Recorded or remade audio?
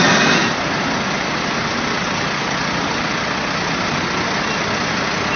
recorded